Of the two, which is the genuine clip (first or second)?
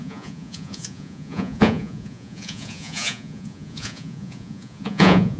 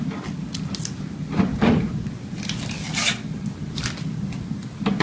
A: second